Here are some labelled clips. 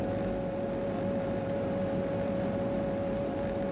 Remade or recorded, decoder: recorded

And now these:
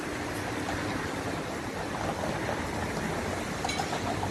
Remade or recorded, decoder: recorded